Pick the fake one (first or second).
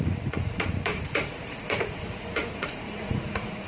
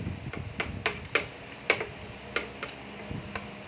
first